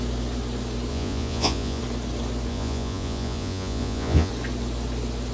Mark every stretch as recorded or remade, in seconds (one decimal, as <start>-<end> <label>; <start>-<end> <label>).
0.0-0.9 recorded; 0.9-1.8 remade; 1.8-2.5 recorded; 2.5-4.3 remade; 4.3-5.3 recorded